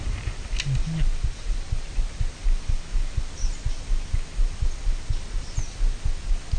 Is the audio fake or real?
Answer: real